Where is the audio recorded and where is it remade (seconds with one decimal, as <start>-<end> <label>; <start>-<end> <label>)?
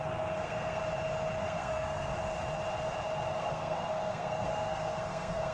0.0-0.8 remade; 0.8-1.4 recorded; 1.4-2.1 remade; 2.1-3.4 recorded; 3.4-5.5 remade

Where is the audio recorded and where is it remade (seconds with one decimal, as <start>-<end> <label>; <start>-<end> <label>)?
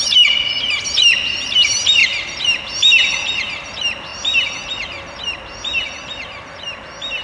0.0-4.1 recorded; 4.1-6.8 remade; 6.8-7.2 recorded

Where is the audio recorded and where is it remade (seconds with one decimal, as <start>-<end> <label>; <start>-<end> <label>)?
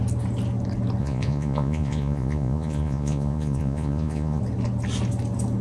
0.0-1.0 recorded; 1.0-4.4 remade; 4.4-5.6 recorded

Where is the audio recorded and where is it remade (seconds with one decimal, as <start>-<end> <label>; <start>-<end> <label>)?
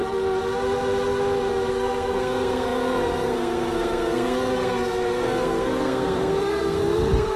0.0-1.7 recorded; 1.7-7.4 remade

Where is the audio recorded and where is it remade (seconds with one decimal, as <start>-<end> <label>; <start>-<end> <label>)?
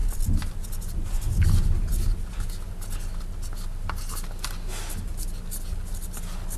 0.0-6.6 recorded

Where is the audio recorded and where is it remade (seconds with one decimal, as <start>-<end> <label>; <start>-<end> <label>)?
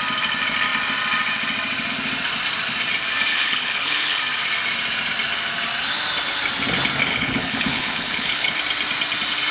0.0-3.3 recorded; 3.3-4.2 remade; 4.2-7.1 recorded; 7.1-8.6 remade; 8.6-9.5 recorded